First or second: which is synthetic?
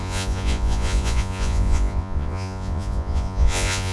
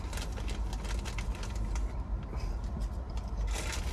first